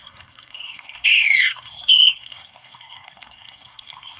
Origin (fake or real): fake